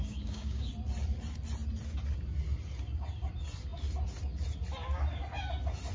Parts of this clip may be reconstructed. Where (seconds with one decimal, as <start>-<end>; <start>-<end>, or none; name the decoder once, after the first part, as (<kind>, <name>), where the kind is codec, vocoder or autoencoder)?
0.0-0.7 (codec, DAC)